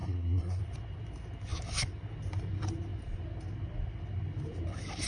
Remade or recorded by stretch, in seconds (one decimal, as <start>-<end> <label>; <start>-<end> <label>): 0.0-0.6 remade; 0.6-5.1 recorded